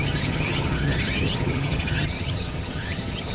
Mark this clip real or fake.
fake